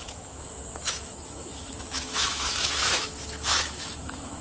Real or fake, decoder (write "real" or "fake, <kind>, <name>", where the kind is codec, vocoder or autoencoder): fake, autoencoder, DAC-VAE